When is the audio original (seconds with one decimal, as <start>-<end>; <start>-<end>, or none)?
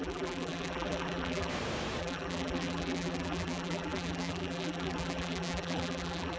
1.5-2.0